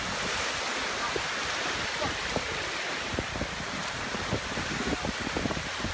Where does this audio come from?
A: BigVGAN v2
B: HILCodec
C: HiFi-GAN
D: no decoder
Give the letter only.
D